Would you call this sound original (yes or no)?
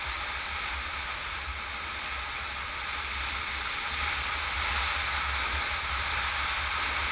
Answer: yes